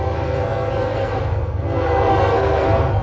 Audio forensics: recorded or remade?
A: remade